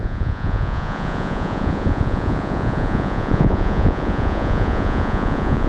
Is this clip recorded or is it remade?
remade